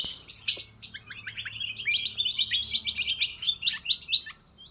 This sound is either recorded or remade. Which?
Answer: recorded